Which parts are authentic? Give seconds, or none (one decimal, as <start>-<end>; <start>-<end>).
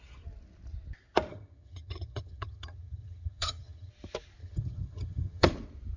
0.0-1.3; 3.9-4.4; 5.5-6.0